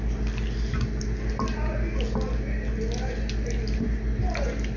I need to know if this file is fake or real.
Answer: real